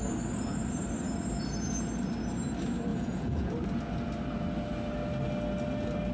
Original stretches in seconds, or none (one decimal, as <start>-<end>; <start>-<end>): 0.0-2.9; 3.5-6.1